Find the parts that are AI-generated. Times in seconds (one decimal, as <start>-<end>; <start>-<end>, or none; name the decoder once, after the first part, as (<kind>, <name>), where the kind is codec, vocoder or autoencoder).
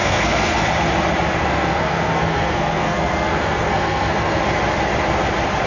0.0-0.7 (codec, SNAC); 1.4-4.4